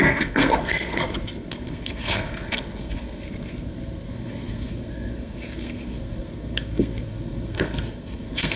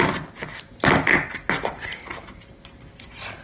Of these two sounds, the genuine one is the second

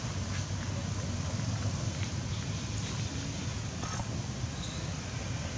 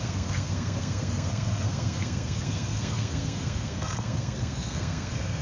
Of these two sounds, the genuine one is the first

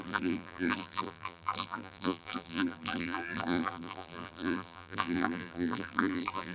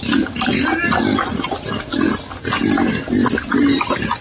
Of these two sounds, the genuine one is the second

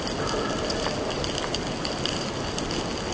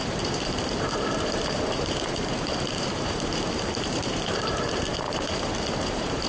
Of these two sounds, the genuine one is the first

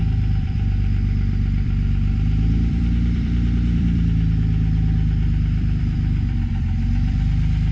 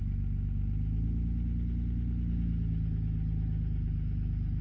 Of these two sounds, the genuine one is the second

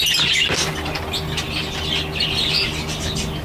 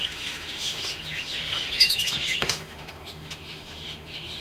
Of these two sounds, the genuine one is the first